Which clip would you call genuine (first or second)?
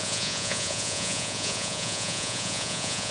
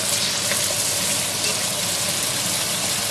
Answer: second